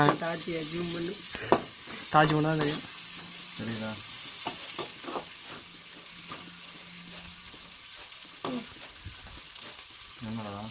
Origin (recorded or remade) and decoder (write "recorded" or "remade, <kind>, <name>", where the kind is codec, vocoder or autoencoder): recorded